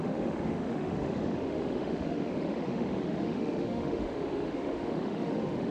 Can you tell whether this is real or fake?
fake